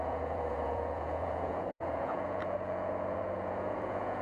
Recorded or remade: remade